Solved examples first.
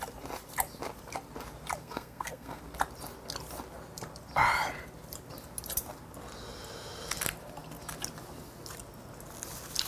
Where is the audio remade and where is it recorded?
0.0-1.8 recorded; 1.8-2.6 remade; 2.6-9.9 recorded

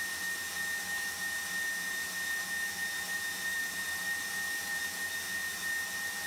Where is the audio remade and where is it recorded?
0.0-3.5 recorded; 3.5-4.8 remade; 4.8-6.3 recorded